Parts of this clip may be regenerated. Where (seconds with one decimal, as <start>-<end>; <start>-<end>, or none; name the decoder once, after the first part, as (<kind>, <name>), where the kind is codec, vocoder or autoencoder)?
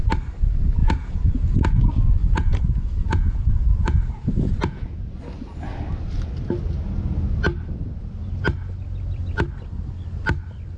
0.8-1.8 (vocoder, Vocos); 2.2-5.0